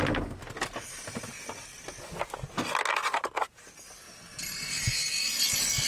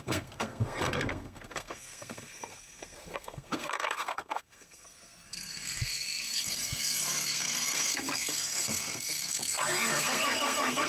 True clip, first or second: first